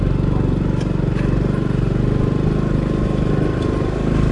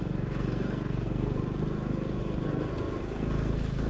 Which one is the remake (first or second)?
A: second